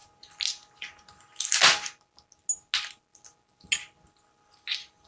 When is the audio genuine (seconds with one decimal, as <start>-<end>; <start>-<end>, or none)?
0.0-5.1